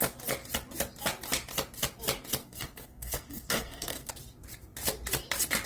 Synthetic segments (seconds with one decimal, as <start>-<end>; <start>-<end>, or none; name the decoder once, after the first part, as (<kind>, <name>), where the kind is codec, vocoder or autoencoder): 2.4-4.1 (codec, SNAC)